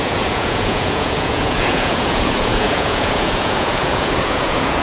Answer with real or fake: fake